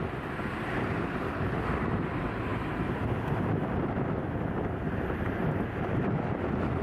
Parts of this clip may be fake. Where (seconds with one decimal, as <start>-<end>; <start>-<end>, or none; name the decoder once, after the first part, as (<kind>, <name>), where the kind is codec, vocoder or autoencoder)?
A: none

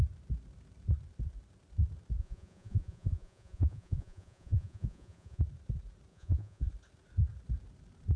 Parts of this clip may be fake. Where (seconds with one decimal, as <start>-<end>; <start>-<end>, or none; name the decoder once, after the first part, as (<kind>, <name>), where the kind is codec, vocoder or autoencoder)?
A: 2.2-5.4 (vocoder, Vocos); 6.1-6.7